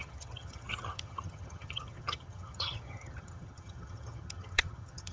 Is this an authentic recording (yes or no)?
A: no